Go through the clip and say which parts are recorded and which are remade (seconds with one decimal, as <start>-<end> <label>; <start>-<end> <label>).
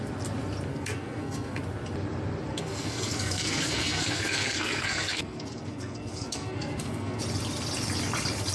0.0-0.7 recorded; 0.7-1.6 remade; 1.6-2.5 recorded; 2.5-7.2 remade; 7.2-8.5 recorded